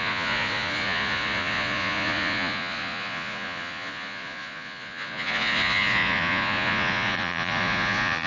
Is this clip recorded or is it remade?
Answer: remade